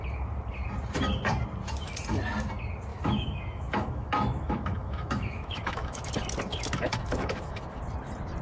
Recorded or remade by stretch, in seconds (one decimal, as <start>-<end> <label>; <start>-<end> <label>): 0.0-2.9 recorded; 2.9-6.1 remade; 6.1-6.5 recorded; 6.5-7.8 remade; 7.8-8.4 recorded

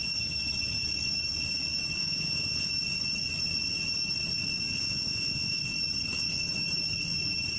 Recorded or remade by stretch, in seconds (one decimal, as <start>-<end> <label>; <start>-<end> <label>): 0.0-2.0 recorded; 2.0-2.7 remade; 2.7-4.8 recorded; 4.8-5.6 remade; 5.6-7.6 recorded